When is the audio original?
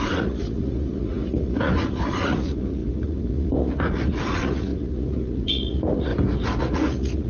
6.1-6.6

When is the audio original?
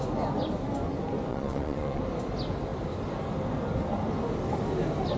0.0-1.3; 2.0-5.2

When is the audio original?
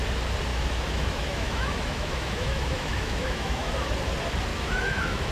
0.0-0.5; 3.7-4.5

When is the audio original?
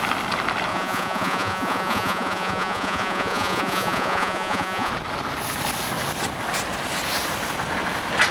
0.0-0.7; 4.9-8.3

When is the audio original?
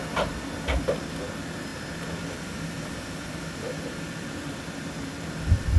0.0-5.8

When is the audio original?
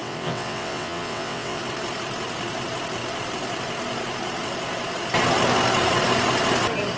1.6-7.0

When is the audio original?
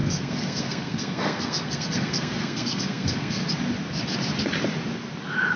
3.4-5.6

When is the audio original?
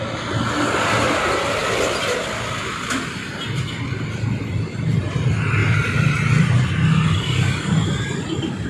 0.0-8.7